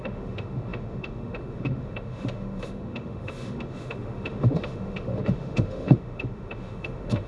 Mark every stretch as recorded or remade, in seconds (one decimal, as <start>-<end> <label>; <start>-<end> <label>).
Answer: 0.0-7.3 remade